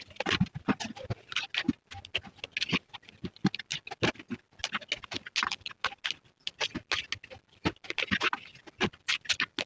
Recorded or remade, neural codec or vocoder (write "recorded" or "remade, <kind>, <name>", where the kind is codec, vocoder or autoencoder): recorded